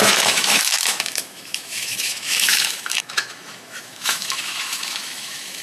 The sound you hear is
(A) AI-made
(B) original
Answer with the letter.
A